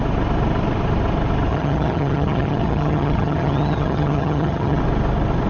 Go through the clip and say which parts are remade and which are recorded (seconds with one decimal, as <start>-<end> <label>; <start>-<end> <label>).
0.0-1.5 recorded; 1.5-4.8 remade; 4.8-5.5 recorded